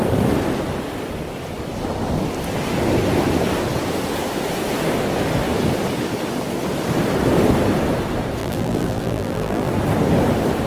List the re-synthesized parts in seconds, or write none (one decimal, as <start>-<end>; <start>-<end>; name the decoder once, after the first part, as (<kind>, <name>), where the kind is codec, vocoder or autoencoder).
8.4-9.7 (vocoder, BigVGAN v2)